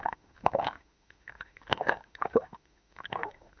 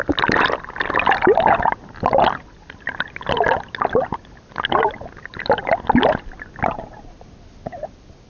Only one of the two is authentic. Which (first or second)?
second